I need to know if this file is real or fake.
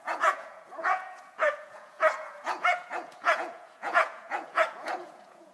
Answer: fake